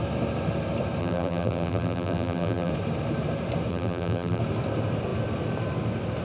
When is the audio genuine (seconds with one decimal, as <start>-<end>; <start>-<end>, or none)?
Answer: 0.0-1.0; 2.7-3.7; 4.4-6.2